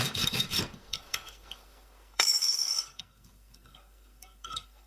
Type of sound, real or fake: fake